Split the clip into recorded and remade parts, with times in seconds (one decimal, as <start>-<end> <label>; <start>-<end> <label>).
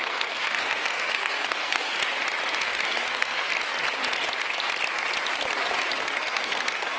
0.0-1.9 remade; 1.9-2.6 recorded; 2.6-3.5 remade; 3.5-6.0 recorded; 6.0-7.0 remade